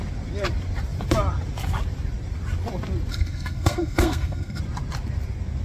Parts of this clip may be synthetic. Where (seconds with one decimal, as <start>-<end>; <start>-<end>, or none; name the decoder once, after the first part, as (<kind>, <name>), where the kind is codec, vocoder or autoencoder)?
3.1-4.6 (codec, SNAC)